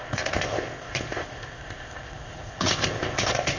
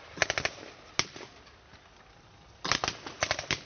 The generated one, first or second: first